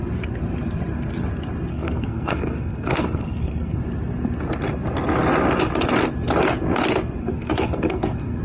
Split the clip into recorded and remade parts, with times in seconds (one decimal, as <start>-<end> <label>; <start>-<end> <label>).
0.0-1.7 recorded; 1.7-3.8 remade; 3.8-7.2 recorded; 7.2-8.4 remade